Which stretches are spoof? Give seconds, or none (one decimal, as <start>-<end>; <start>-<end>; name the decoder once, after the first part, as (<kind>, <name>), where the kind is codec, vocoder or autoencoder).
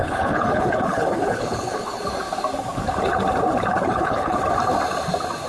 0.0-2.0 (codec, HILCodec); 3.7-4.4